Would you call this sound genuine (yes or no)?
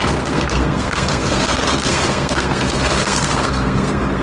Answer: no